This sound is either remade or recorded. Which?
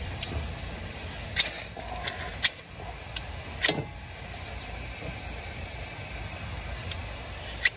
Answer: recorded